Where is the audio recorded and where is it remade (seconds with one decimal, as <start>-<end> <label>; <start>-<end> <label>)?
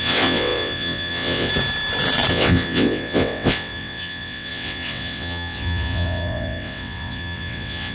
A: 0.0-1.5 remade; 1.5-2.3 recorded; 2.3-7.9 remade